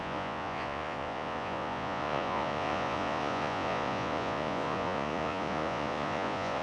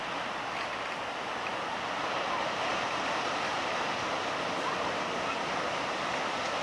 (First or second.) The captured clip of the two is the second